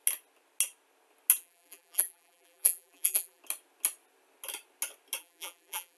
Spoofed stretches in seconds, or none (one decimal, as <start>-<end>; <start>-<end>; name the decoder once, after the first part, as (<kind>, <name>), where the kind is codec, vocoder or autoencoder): 1.4-3.4 (vocoder, BigVGAN v2); 5.2-6.0